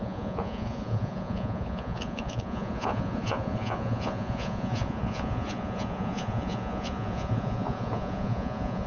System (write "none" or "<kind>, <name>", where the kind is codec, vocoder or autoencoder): vocoder, Vocos